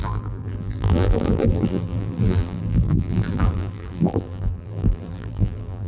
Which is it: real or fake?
fake